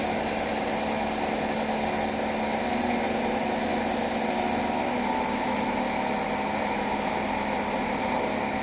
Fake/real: real